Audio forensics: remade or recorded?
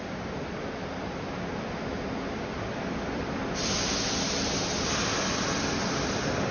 recorded